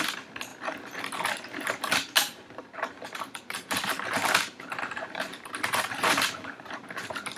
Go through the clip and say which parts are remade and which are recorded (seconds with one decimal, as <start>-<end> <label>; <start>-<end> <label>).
0.0-2.3 recorded; 2.3-6.7 remade; 6.7-7.4 recorded